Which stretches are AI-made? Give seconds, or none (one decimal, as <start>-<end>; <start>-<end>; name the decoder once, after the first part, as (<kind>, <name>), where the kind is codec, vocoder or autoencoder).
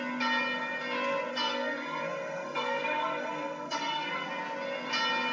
1.3-4.3 (codec, SNAC)